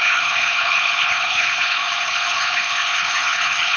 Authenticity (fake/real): fake